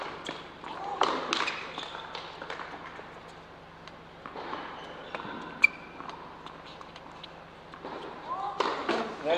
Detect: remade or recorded recorded